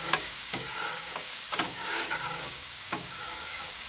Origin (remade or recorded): remade